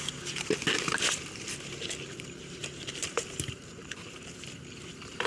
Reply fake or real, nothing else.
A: fake